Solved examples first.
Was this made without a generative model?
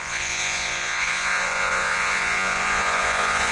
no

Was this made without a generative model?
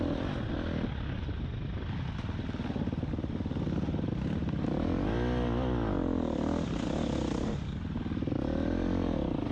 yes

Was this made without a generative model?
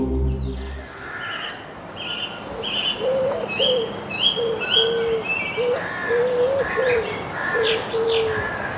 yes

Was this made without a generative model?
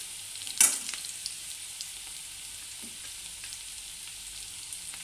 yes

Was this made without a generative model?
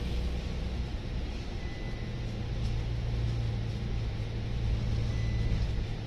yes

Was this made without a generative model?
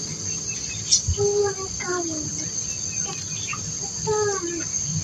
yes